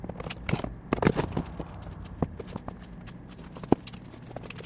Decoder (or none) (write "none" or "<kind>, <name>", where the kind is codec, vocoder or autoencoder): vocoder, BigVGAN v2